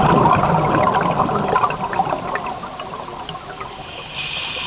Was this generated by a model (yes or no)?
no